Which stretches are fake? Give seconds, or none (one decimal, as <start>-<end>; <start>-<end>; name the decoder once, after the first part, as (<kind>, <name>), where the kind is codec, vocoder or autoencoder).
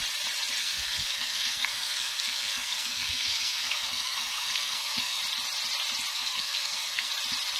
0.6-5.2 (codec, SNAC); 6.1-7.1